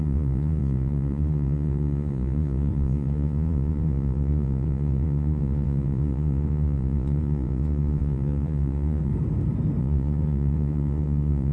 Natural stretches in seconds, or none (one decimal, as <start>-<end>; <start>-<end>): 9.1-9.8